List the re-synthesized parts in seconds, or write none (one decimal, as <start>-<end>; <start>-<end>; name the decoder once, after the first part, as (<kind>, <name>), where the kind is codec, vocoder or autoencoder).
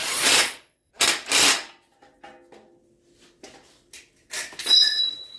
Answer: 0.0-0.9 (vocoder, Vocos); 4.6-5.4